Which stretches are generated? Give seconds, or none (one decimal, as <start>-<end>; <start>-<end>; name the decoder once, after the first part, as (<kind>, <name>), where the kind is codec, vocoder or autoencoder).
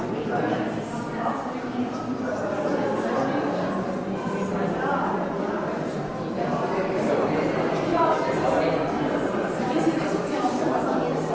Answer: 7.9-10.7 (vocoder, BigVGAN v2)